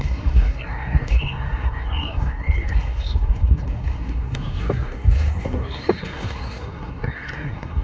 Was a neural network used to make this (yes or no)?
yes